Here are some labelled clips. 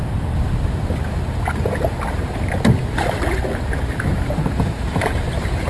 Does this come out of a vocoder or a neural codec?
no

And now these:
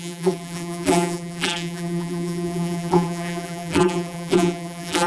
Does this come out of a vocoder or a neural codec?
yes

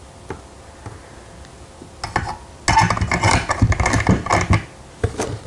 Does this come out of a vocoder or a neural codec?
no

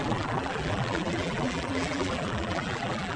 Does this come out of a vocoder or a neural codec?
yes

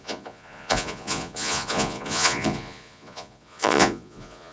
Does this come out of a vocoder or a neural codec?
yes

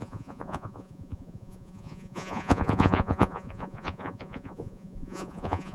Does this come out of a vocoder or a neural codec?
yes